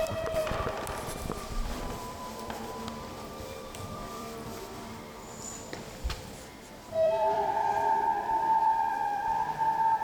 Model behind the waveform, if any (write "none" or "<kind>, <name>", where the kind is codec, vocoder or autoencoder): vocoder, BigVGAN v2